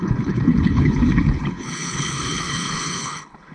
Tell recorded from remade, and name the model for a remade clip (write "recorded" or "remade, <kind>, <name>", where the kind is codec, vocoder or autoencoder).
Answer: remade, codec, HILCodec